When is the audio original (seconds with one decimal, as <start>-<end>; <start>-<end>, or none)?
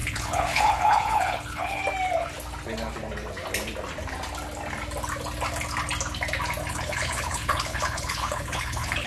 1.8-6.7